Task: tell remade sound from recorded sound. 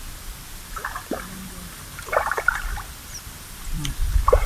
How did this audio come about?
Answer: remade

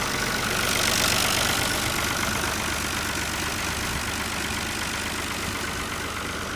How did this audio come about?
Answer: recorded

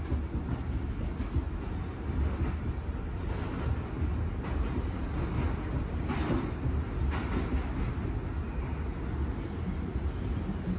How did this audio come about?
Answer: recorded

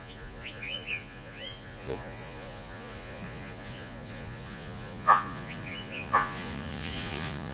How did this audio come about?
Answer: remade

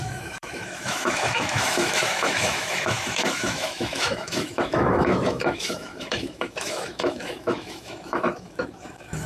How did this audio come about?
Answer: remade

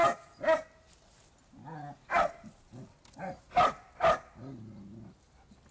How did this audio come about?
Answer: recorded